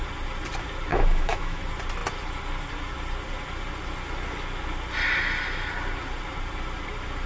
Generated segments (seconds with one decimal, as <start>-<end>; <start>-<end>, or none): 0.9-1.6